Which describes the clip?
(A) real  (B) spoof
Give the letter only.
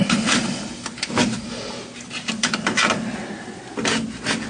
A